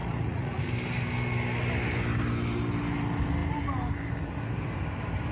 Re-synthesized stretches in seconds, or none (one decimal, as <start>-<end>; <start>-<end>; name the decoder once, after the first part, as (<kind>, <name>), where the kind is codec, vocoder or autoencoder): 0.0-0.6 (vocoder, Vocos)